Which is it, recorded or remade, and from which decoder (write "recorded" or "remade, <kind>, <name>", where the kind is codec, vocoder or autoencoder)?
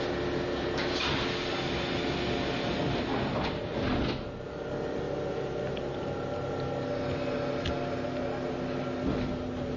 recorded